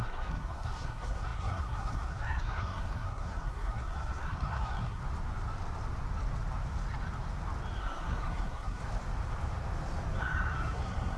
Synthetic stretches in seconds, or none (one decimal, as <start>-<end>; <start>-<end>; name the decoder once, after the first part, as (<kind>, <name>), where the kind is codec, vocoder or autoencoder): 0.0-5.0 (codec, SNAC); 7.8-8.8; 10.2-11.2